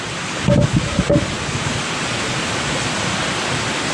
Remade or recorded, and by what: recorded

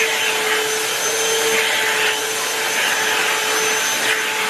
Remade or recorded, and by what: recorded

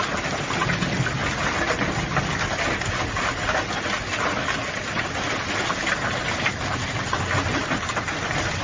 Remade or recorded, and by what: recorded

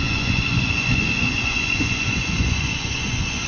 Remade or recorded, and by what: remade, vocoder, Vocos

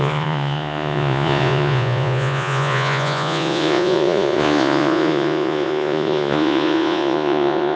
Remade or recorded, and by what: remade, vocoder, Vocos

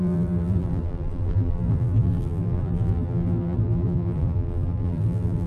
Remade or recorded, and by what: remade, vocoder, BigVGAN v2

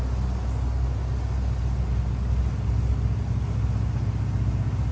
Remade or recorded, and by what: recorded